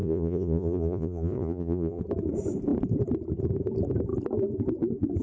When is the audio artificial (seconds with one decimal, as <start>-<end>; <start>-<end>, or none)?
0.0-2.0